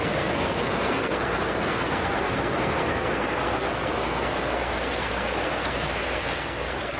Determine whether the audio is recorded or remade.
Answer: remade